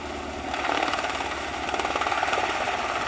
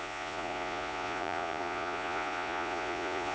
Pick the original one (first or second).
first